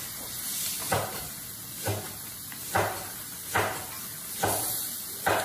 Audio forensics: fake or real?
real